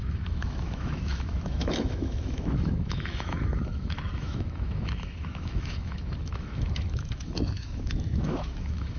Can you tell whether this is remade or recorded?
remade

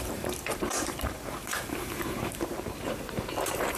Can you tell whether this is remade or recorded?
remade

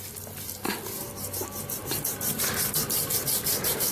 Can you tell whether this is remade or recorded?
recorded